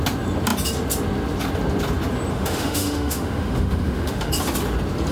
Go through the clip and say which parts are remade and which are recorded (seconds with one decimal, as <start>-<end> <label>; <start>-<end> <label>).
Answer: 0.0-2.3 recorded; 2.3-4.3 remade; 4.3-5.1 recorded